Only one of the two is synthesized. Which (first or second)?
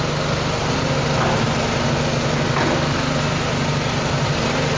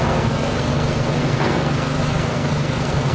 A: second